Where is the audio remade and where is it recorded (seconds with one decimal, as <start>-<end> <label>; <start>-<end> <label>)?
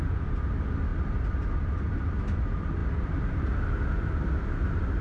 0.0-5.0 recorded